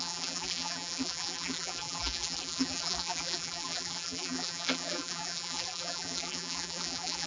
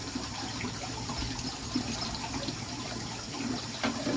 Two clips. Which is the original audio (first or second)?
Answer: second